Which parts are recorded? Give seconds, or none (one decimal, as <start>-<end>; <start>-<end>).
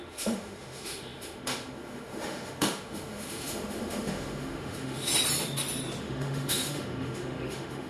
5.1-6.0